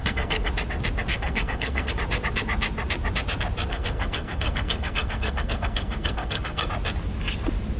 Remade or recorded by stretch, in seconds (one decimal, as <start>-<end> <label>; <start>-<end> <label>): 0.0-0.5 remade; 0.5-1.1 recorded; 1.1-1.9 remade; 1.9-3.7 recorded; 3.7-6.7 remade; 6.7-7.8 recorded